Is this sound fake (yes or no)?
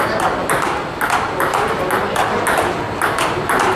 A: no